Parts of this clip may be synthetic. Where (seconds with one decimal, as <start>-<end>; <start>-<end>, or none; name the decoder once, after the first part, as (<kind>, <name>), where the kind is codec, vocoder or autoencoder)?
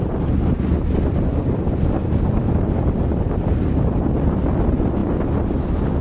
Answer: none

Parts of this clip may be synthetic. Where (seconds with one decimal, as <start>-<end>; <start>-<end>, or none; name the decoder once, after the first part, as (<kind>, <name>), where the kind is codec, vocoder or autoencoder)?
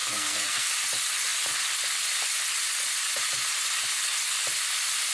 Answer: 0.0-0.7 (codec, SNAC)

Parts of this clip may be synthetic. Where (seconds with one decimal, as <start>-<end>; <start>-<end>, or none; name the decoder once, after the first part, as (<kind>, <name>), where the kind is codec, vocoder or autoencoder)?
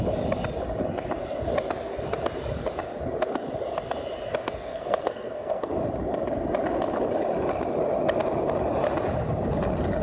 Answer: 4.7-5.7 (codec, SNAC)